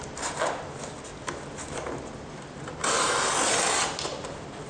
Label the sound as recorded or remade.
recorded